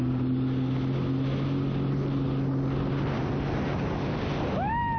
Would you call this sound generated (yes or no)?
no